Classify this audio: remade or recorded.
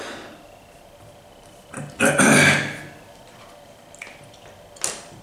recorded